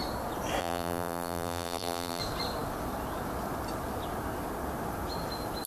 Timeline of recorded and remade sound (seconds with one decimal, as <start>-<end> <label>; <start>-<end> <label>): 0.0-0.6 recorded; 0.6-2.2 remade; 2.2-5.7 recorded